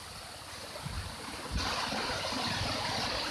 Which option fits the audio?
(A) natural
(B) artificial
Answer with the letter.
A